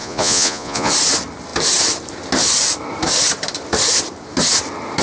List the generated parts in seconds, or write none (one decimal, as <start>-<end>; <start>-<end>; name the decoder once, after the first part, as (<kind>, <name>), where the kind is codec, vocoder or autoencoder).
0.0-0.9 (vocoder, Vocos)